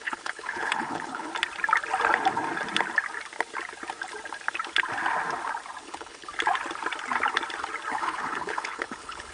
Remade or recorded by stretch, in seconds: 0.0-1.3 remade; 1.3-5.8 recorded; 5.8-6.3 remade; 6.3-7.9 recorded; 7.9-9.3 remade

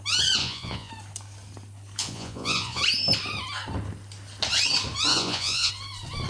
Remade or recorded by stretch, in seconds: 0.0-0.4 recorded; 0.4-0.9 remade; 0.9-2.0 recorded; 2.0-2.8 remade; 2.8-5.1 recorded; 5.1-5.7 remade; 5.7-6.3 recorded

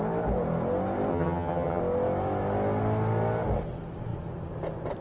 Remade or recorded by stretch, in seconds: 0.0-1.1 recorded; 1.1-1.8 remade; 1.8-5.0 recorded

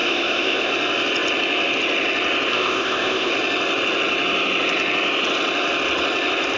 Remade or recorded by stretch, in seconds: 0.0-0.7 remade; 0.7-2.5 recorded; 2.5-3.3 remade; 3.3-6.6 recorded

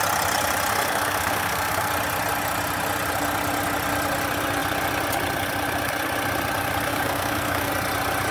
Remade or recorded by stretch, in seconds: 0.0-0.7 recorded; 0.7-1.9 remade; 1.9-6.9 recorded; 6.9-7.7 remade; 7.7-8.3 recorded

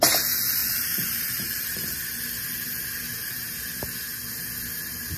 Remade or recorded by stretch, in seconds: 0.0-0.6 recorded; 0.6-2.0 remade; 2.0-5.2 recorded